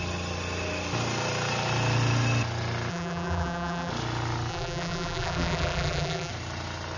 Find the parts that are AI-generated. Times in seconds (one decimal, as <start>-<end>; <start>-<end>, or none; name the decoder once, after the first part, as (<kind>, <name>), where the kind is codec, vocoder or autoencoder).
2.9-3.9 (vocoder, BigVGAN v2); 4.5-6.3